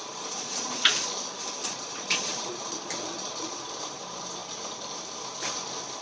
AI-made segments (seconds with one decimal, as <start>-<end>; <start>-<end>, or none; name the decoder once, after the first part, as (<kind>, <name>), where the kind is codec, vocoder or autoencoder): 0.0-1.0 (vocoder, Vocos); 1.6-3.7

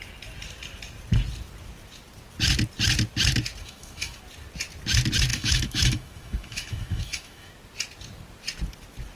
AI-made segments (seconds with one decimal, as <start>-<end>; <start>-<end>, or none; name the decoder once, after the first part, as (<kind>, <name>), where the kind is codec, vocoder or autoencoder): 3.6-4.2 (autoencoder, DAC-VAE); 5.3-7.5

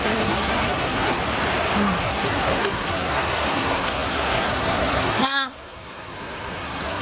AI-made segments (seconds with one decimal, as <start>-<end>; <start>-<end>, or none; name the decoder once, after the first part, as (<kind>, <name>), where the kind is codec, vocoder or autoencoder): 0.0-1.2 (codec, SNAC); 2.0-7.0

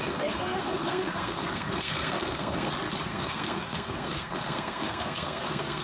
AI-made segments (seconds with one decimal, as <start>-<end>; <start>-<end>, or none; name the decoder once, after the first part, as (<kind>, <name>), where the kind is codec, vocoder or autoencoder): 0.0-2.7 (codec, SNAC); 3.1-5.8

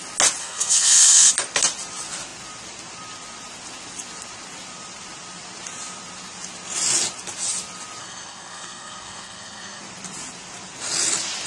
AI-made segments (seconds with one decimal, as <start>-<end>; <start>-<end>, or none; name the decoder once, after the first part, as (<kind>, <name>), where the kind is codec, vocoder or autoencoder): 0.4-1.3 (codec, SNAC); 8.0-9.8

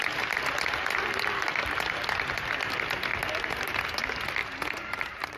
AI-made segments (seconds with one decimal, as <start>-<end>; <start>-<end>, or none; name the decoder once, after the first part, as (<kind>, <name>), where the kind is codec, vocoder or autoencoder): 3.1-3.8 (vocoder, BigVGAN v2); 4.4-5.4

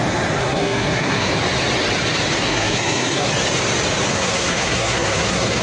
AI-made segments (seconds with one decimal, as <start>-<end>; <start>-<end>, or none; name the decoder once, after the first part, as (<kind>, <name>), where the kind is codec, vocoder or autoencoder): 0.4-1.3 (codec, SNAC); 2.4-3.3; 4.1-5.6

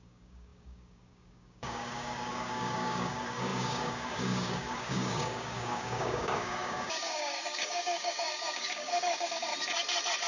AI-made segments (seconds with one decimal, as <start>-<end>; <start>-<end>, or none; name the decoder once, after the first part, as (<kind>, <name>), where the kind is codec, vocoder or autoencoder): 0.0-9.5 (codec, DAC)